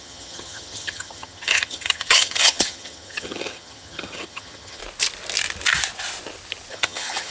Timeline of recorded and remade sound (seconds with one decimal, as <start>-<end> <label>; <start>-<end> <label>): 0.0-4.8 remade; 4.8-6.7 recorded; 6.7-7.3 remade